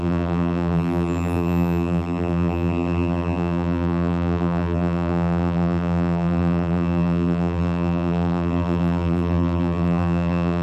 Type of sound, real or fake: fake